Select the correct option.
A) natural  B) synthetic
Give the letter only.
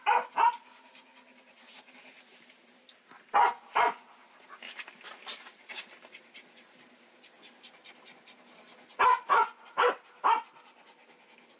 A